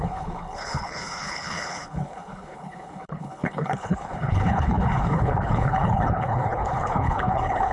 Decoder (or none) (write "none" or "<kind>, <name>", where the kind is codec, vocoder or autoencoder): codec, HILCodec